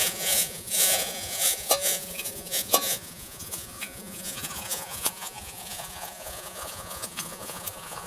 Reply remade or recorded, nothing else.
remade